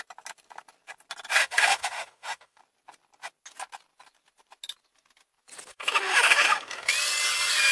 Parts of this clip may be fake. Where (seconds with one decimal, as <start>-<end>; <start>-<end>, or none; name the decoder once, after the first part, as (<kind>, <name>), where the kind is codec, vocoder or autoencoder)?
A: 1.4-2.6 (autoencoder, DAC-VAE); 5.7-6.9